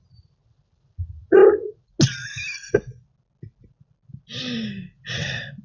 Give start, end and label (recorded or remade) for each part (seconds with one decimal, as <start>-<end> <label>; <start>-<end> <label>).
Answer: 0.0-5.6 recorded